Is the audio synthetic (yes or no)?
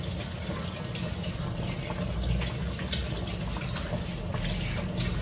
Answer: no